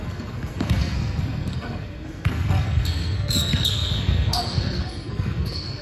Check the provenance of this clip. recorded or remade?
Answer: remade